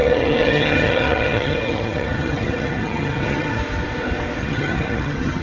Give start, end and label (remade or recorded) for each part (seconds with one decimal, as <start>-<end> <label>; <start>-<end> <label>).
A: 0.0-3.6 remade; 3.6-4.4 recorded; 4.4-5.4 remade

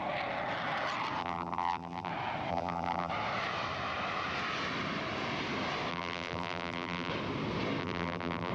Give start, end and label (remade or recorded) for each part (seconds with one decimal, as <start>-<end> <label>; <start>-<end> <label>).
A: 0.0-1.2 recorded; 1.2-2.1 remade; 2.1-2.5 recorded; 2.5-3.1 remade; 3.1-5.9 recorded; 5.9-7.1 remade; 7.1-7.8 recorded; 7.8-8.5 remade